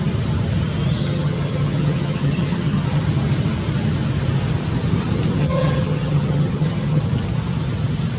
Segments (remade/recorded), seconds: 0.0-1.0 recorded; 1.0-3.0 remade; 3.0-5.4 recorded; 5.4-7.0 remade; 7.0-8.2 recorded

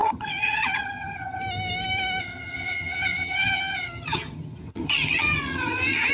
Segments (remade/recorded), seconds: 0.0-1.4 remade; 1.4-2.2 recorded; 2.2-6.1 remade

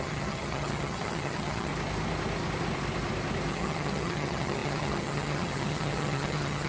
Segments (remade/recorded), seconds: 0.0-1.7 remade; 1.7-3.5 recorded; 3.5-6.7 remade

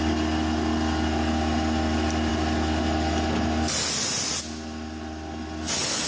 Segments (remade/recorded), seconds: 0.0-6.1 recorded

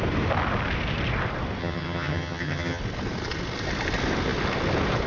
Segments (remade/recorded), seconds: 0.0-1.6 recorded; 1.6-2.8 remade; 2.8-5.1 recorded

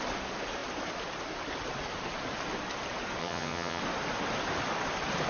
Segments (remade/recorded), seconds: 0.0-3.2 recorded; 3.2-3.8 remade; 3.8-5.3 recorded

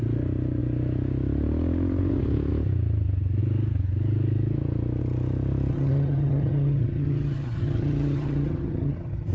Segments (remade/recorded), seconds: 0.0-5.7 recorded; 5.7-9.3 remade

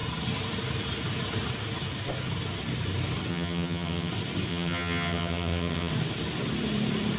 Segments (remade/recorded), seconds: 0.0-3.3 recorded; 3.3-4.1 remade; 4.1-4.5 recorded; 4.5-5.9 remade; 5.9-7.2 recorded